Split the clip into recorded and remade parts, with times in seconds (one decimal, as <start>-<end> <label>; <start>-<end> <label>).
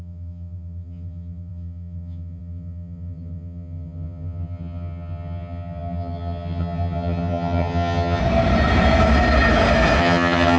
0.0-8.2 remade; 8.2-10.0 recorded; 10.0-10.6 remade